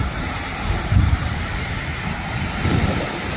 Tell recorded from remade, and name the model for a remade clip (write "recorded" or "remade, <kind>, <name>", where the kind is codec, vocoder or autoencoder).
recorded